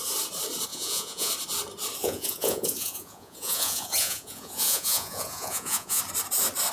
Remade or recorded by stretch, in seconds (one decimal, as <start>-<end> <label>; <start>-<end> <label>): 0.0-0.7 recorded; 0.7-1.3 remade; 1.3-2.0 recorded; 2.0-6.0 remade; 6.0-6.7 recorded